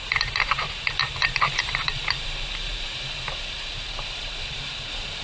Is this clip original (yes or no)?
no